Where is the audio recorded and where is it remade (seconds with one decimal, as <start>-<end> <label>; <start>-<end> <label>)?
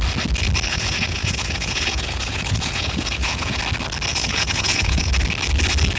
0.0-0.7 recorded; 0.7-3.6 remade; 3.6-4.1 recorded; 4.1-5.1 remade; 5.1-6.0 recorded